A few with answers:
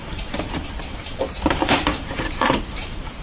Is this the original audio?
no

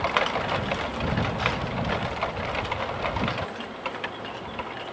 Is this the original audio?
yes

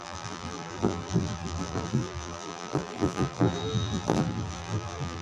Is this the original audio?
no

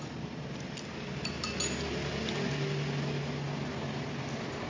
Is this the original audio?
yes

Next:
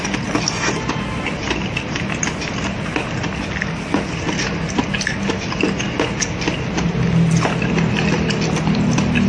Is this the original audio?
yes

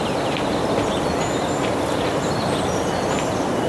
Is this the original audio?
yes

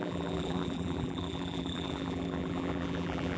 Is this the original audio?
no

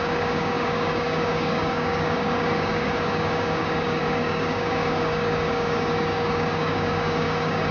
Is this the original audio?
no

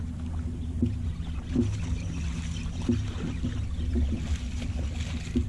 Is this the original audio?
yes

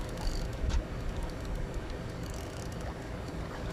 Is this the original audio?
no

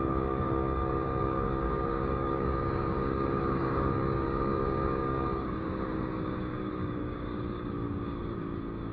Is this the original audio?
no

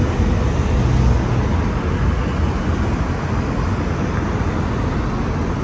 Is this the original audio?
yes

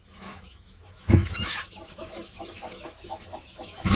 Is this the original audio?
no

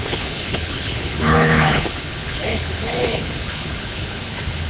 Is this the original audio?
no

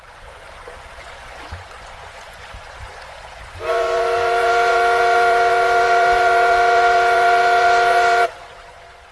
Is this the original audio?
no